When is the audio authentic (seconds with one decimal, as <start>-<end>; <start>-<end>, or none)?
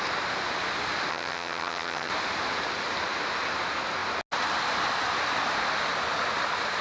0.0-1.1; 2.1-6.8